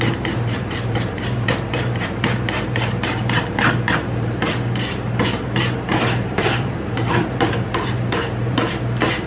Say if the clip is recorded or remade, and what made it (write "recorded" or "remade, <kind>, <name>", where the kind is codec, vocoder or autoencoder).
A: remade, vocoder, BigVGAN v2